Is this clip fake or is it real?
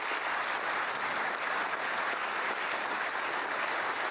real